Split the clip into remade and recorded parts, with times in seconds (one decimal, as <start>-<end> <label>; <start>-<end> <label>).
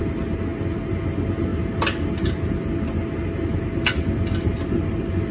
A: 0.0-5.3 recorded